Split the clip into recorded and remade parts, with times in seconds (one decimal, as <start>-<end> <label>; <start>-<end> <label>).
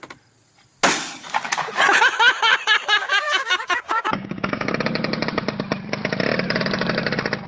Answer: 0.0-3.0 recorded; 3.0-4.7 remade; 4.7-7.5 recorded